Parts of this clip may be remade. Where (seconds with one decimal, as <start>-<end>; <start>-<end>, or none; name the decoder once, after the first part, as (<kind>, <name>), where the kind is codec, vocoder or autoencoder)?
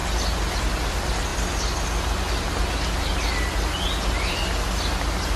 none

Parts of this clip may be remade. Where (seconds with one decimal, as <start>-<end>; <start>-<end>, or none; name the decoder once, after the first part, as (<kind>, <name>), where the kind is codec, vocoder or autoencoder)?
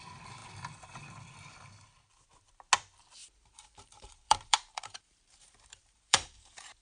3.2-6.8 (vocoder, BigVGAN v2)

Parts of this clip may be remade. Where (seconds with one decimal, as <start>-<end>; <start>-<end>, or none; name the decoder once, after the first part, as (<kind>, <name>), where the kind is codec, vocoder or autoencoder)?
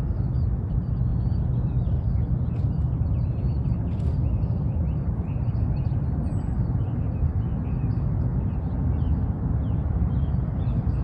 none